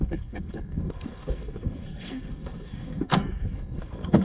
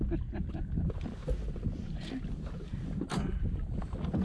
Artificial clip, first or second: first